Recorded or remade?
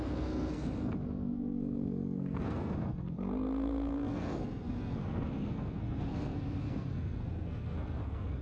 remade